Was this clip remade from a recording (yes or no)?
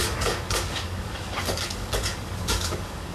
yes